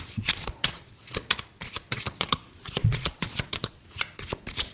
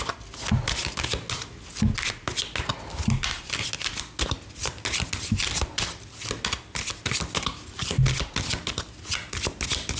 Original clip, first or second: second